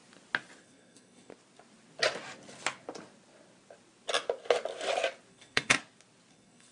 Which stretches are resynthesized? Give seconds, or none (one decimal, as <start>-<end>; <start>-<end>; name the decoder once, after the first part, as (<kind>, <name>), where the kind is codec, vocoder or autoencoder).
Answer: 0.6-1.3 (codec, SNAC); 5.3-5.7; 6.3-6.7